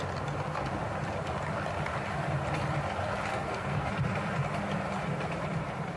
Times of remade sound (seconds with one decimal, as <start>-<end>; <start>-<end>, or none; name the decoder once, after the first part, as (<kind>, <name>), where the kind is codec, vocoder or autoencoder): 3.3-3.9 (codec, SNAC)